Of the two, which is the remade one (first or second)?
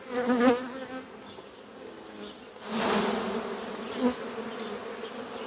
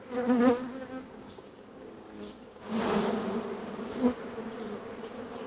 second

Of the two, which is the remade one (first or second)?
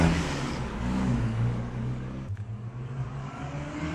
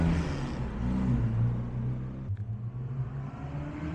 first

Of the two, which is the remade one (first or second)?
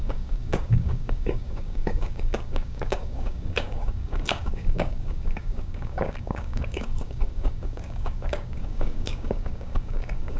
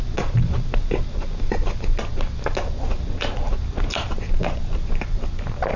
first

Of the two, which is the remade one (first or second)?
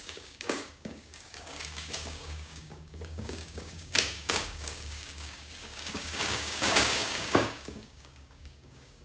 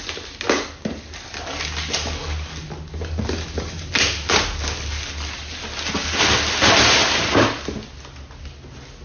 first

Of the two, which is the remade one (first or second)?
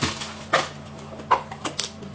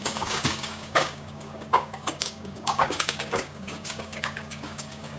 second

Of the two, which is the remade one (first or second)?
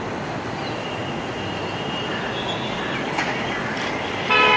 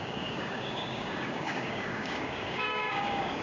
second